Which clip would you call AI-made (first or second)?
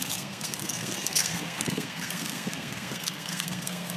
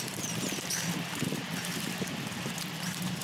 first